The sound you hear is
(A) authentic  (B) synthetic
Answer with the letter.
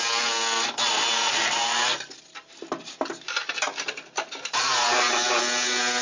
A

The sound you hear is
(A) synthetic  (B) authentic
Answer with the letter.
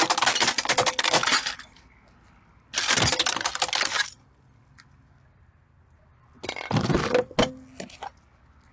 B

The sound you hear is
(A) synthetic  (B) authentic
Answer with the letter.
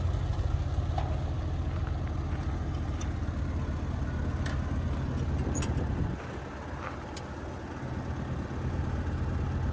B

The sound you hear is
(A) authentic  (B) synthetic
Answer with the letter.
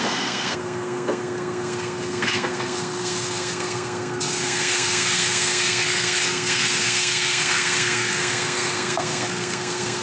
B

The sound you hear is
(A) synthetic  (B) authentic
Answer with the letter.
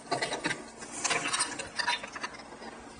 B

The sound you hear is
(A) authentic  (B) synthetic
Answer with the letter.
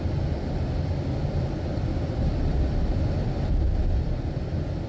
A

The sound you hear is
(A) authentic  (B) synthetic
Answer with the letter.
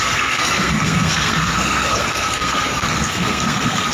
B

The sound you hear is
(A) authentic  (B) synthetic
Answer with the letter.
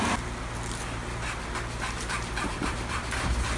A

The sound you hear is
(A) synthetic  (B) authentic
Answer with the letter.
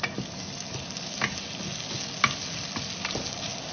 B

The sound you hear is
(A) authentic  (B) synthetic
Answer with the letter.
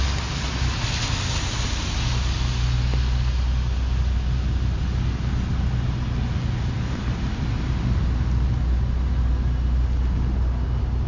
A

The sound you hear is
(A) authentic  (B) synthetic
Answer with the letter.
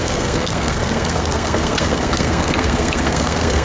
B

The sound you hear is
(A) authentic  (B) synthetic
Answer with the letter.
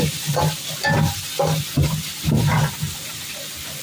A